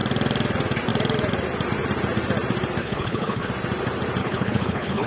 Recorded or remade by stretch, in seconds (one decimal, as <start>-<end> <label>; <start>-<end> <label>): 0.0-2.8 recorded; 2.8-3.5 remade; 3.5-4.2 recorded; 4.2-5.1 remade